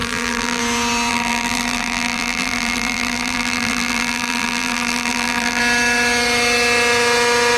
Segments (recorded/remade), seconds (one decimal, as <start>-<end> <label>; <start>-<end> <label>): 0.0-0.6 remade; 0.6-1.1 recorded; 1.1-5.6 remade; 5.6-7.6 recorded